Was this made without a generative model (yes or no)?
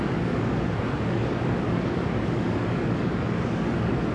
no